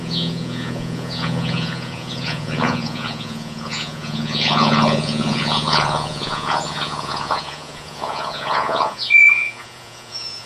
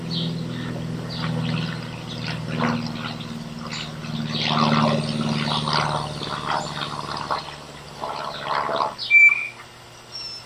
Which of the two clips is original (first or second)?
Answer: second